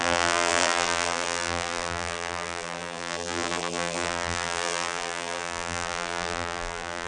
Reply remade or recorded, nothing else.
remade